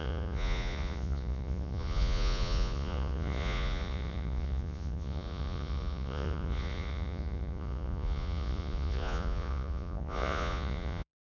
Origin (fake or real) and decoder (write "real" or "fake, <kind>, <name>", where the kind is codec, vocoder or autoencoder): fake, vocoder, Vocos